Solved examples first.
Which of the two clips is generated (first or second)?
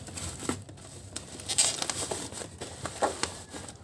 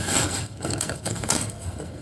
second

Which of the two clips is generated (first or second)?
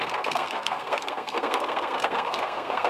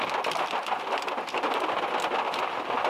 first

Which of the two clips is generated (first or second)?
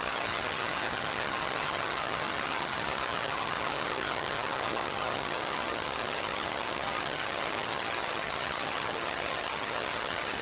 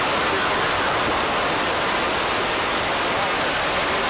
first